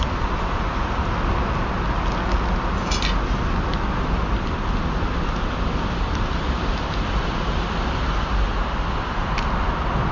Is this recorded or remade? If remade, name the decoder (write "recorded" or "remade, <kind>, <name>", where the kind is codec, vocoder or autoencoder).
recorded